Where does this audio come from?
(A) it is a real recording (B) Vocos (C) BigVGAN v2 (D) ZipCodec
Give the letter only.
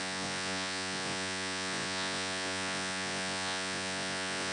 B